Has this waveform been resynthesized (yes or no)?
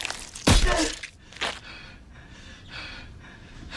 no